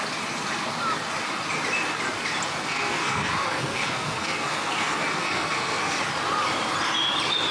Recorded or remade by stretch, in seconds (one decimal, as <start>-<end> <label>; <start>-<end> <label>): 0.0-2.6 recorded; 2.6-6.0 remade; 6.0-7.5 recorded

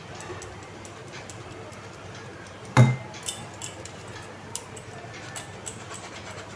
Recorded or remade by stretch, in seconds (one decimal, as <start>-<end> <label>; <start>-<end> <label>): 0.0-6.6 recorded

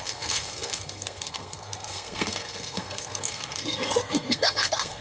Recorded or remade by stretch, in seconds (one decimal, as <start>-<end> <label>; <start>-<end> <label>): 0.0-5.0 remade

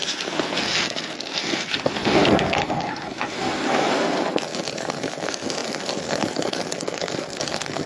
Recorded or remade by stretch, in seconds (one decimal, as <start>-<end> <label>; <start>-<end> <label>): 0.0-7.9 remade

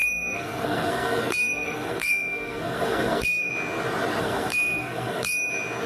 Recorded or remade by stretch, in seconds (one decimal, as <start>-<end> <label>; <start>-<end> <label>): 0.0-3.5 remade; 3.5-4.2 recorded; 4.2-5.5 remade; 5.5-5.9 recorded